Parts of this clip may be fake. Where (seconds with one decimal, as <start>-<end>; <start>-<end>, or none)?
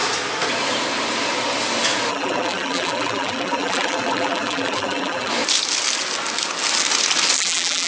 2.1-5.3; 7.4-7.9